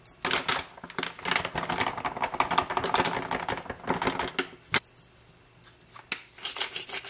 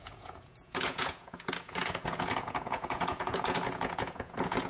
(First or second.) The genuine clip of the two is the first